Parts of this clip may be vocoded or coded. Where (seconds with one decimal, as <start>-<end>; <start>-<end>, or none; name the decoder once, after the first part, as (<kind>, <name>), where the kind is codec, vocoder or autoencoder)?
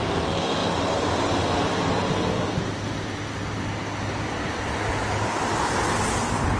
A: none